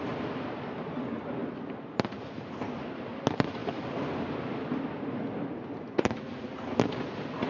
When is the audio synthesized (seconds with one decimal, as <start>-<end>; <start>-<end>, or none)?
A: none